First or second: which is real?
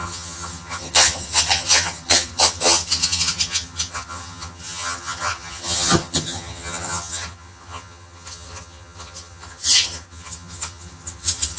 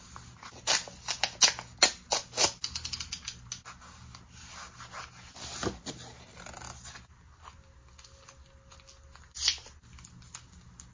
second